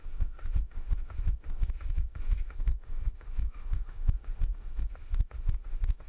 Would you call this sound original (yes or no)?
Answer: no